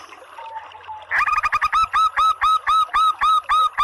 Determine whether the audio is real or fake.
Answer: real